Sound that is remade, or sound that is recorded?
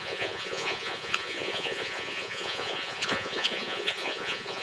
remade